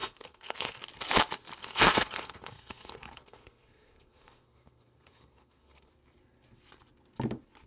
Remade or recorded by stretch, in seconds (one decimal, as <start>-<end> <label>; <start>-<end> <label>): 0.0-0.8 remade; 0.8-1.6 recorded; 1.6-5.9 remade; 5.9-7.7 recorded